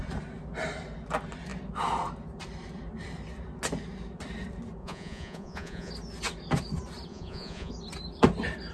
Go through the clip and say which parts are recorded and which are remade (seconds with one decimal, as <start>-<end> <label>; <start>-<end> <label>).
0.0-4.8 recorded; 4.8-5.9 remade; 5.9-7.1 recorded; 7.1-7.7 remade; 7.7-8.7 recorded